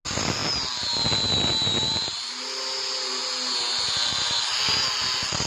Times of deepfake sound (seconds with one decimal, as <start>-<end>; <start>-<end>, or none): none